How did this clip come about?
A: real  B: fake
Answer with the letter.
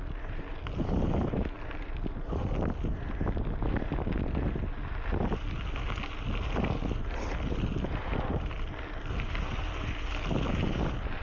A